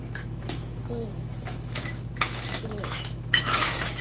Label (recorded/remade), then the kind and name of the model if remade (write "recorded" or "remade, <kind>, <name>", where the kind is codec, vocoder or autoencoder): remade, autoencoder, DAC-VAE